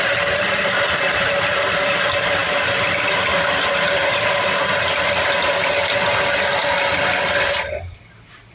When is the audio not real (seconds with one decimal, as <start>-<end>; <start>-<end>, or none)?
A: none